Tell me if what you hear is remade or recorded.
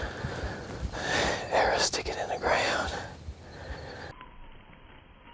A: recorded